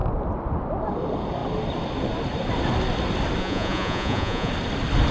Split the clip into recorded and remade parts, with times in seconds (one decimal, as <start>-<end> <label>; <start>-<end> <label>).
0.0-3.4 recorded; 3.4-4.5 remade; 4.5-5.1 recorded